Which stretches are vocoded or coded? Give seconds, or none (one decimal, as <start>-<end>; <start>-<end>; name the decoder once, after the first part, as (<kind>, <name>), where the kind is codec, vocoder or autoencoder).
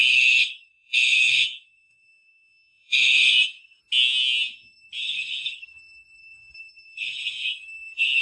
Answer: 0.0-3.8 (codec, SNAC); 5.0-5.8; 6.2-8.2